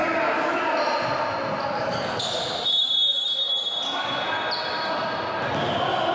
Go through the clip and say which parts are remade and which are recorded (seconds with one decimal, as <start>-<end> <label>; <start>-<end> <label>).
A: 0.0-6.1 recorded